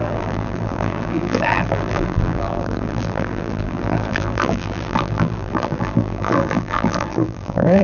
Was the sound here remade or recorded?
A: remade